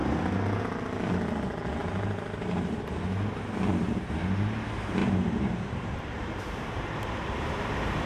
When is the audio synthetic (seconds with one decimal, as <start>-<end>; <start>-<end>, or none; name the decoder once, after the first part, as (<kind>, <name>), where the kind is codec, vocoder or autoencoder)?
1.8-2.8 (vocoder, BigVGAN v2); 5.0-8.1